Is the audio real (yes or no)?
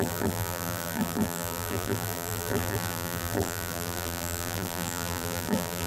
no